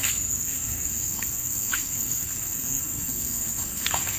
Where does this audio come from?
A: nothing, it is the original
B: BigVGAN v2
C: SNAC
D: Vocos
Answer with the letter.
C